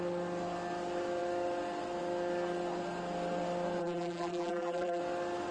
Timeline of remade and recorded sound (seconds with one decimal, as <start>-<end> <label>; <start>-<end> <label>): 0.0-3.8 recorded; 3.8-5.0 remade; 5.0-5.5 recorded